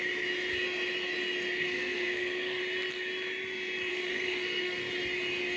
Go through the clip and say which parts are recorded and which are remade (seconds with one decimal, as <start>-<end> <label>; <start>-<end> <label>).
0.0-1.6 recorded; 1.6-2.6 remade; 2.6-3.9 recorded; 3.9-4.9 remade; 4.9-5.6 recorded

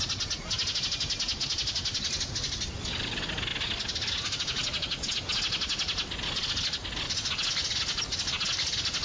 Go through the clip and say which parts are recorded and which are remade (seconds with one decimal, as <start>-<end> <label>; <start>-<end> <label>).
0.0-9.0 recorded